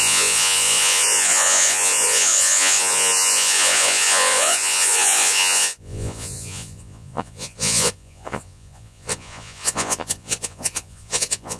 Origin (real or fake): fake